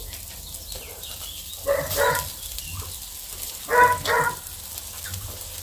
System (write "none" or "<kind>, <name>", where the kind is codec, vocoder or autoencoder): none